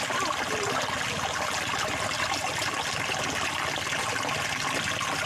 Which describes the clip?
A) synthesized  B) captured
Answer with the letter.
B